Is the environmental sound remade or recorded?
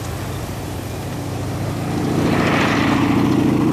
remade